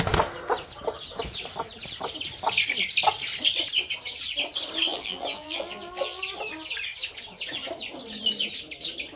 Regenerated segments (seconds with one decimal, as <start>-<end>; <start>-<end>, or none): 4.9-6.2